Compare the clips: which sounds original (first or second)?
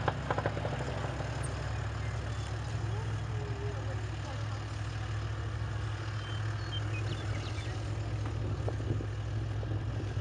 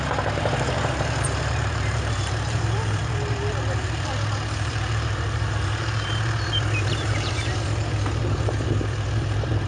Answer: first